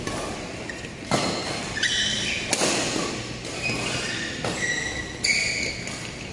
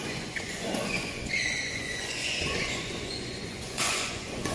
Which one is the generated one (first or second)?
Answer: second